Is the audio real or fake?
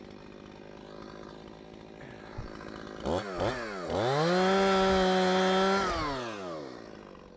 real